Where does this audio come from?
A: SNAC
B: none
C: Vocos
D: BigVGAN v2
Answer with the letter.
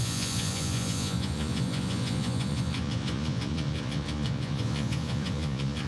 C